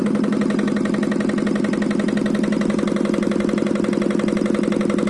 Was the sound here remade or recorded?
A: recorded